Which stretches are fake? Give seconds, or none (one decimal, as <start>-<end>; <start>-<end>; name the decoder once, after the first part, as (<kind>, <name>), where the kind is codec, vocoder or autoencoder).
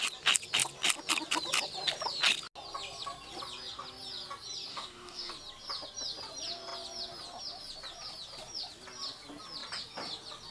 4.7-5.3 (codec, DAC)